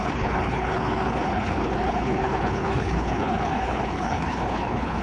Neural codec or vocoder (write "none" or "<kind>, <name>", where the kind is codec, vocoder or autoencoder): codec, HILCodec